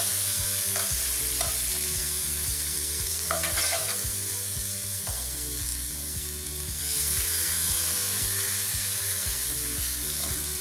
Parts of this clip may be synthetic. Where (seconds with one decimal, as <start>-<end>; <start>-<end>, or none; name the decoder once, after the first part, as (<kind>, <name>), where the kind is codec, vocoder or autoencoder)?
0.0-1.0 (codec, SNAC); 1.7-10.6